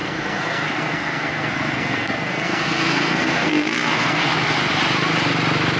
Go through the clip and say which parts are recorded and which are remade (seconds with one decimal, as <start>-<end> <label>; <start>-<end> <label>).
0.0-4.3 remade; 4.3-5.8 recorded